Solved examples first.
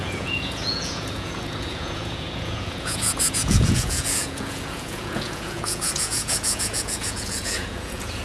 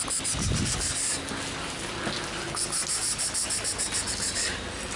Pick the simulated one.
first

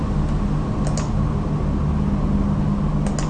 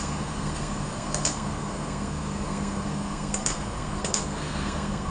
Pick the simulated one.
second